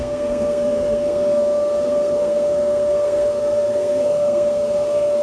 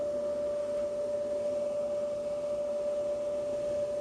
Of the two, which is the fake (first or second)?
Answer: first